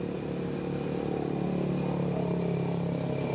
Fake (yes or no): no